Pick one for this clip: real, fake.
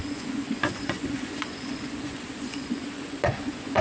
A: fake